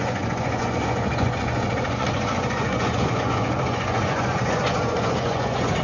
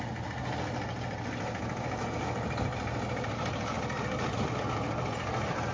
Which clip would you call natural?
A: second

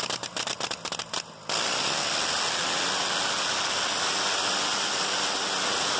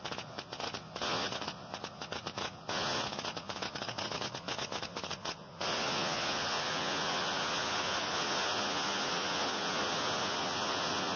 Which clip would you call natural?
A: first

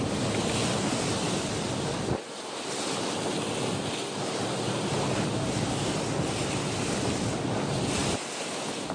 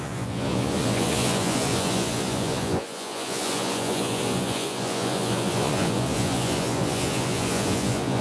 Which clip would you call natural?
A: first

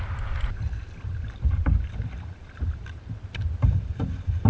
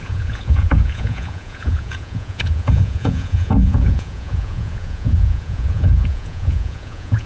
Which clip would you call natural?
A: first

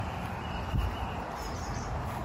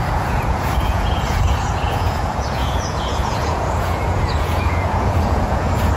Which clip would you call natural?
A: first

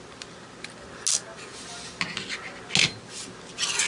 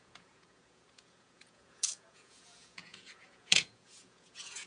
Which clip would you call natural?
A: first